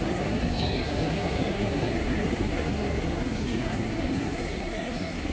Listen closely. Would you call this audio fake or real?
fake